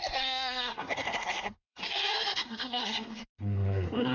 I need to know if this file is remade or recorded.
remade